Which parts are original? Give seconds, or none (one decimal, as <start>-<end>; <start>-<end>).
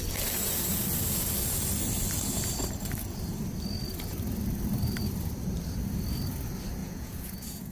0.0-6.8